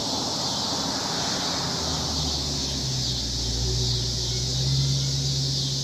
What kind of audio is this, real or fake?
real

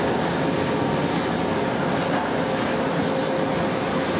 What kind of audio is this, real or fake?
real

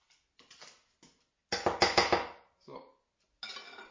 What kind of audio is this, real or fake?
real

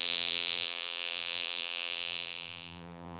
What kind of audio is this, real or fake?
fake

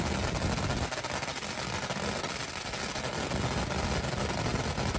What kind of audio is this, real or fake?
real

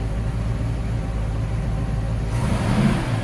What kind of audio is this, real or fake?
real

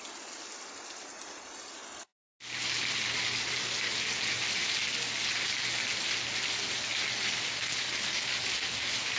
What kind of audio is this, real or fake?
real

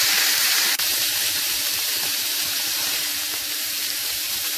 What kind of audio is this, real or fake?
fake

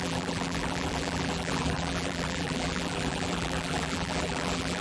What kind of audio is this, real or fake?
fake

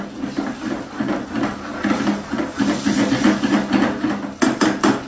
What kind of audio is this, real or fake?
real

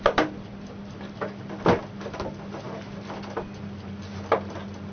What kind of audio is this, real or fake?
fake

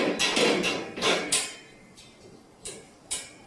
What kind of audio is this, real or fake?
fake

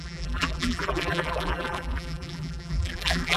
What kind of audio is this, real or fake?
fake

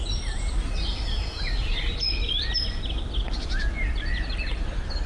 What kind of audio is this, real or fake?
real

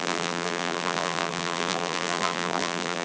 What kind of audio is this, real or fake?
fake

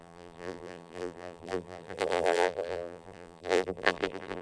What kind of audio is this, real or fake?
fake